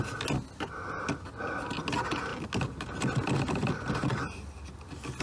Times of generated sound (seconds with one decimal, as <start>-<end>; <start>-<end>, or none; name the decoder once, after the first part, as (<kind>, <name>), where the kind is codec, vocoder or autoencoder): none